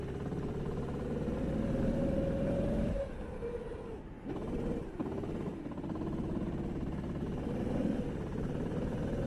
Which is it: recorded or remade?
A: recorded